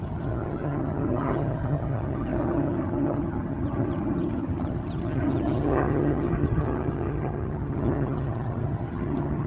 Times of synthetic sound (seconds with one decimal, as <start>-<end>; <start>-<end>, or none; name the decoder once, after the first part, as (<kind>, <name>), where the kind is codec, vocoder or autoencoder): 0.0-9.5 (vocoder, HiFi-GAN)